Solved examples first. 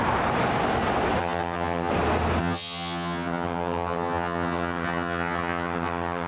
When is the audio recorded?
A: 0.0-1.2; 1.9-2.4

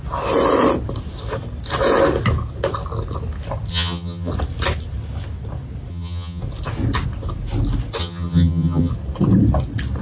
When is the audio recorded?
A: 0.0-3.7; 4.3-5.9; 6.4-8.0; 8.9-10.0

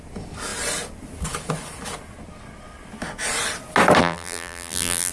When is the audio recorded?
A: 0.0-4.0

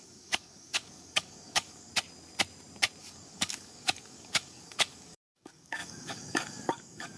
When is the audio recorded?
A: 1.9-3.0

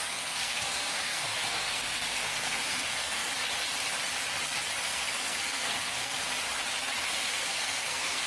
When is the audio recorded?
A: 3.3-4.8; 6.3-7.0

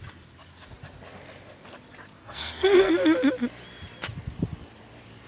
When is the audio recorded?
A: 0.0-2.2; 2.9-5.3

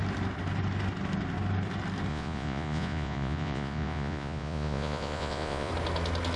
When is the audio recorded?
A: 0.0-2.1; 5.7-6.4

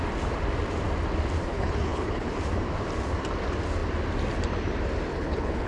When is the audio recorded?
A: 0.0-1.5; 2.3-5.1